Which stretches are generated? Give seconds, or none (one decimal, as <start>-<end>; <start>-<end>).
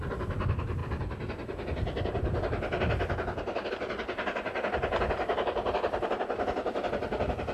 none